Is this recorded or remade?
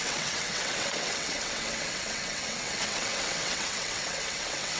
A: remade